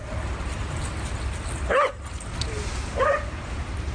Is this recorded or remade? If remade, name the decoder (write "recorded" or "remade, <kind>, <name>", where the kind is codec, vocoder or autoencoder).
recorded